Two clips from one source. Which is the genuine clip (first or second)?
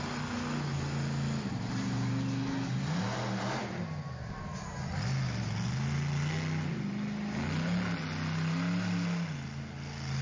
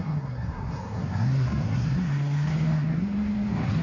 first